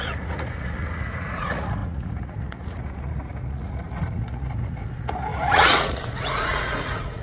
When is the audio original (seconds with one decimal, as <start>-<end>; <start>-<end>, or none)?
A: none